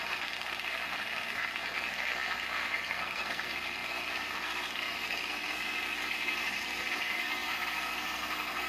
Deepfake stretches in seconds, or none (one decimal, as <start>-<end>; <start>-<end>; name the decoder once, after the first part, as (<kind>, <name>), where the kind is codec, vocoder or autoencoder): 0.0-8.7 (codec, SNAC)